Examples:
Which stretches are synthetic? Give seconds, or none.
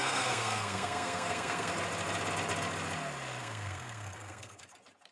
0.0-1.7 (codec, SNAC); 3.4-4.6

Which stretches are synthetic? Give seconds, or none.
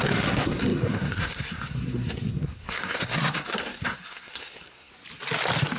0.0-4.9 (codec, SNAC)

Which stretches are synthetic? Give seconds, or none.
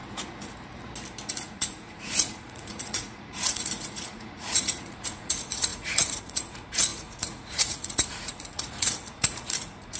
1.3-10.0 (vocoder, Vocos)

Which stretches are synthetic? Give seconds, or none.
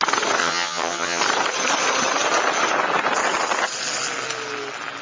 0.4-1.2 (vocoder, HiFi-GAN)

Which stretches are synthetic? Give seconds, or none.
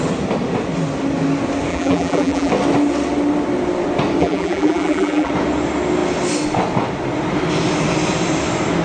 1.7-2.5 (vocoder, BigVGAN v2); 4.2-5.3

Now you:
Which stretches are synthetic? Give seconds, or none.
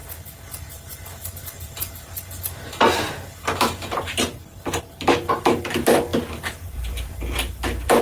4.8-8.0 (vocoder, BigVGAN v2)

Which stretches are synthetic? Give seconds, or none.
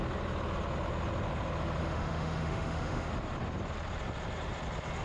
1.8-3.1 (autoencoder, DAC-VAE)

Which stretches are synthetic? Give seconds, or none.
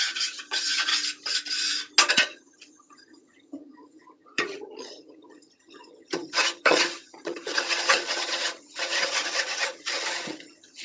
0.0-0.9 (vocoder, HiFi-GAN); 2.1-10.8